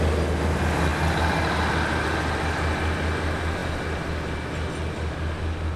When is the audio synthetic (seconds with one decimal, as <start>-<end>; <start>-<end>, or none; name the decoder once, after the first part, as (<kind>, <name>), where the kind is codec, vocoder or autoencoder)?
none